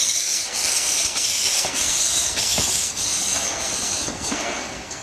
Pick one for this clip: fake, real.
fake